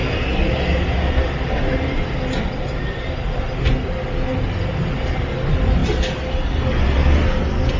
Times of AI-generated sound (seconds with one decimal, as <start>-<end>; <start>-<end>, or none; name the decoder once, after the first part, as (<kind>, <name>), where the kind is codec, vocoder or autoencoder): none